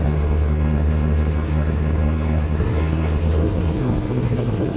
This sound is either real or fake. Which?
fake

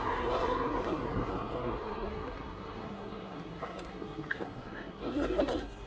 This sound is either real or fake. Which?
fake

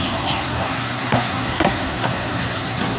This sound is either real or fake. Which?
fake